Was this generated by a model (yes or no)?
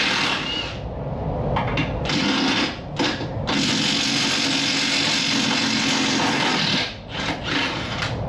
no